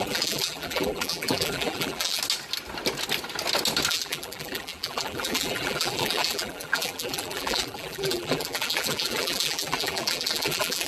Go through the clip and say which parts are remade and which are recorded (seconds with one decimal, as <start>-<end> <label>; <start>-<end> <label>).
0.0-2.2 remade; 2.2-3.9 recorded; 3.9-10.9 remade